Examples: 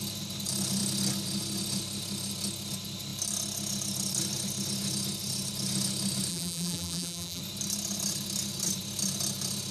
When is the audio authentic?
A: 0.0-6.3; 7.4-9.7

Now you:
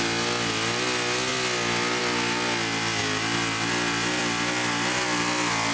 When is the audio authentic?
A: 0.0-5.7